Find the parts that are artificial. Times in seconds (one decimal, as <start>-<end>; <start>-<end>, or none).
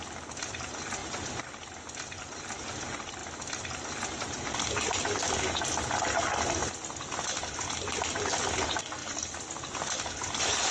none